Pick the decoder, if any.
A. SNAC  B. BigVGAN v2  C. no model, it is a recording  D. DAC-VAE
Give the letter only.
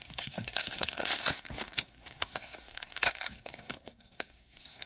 A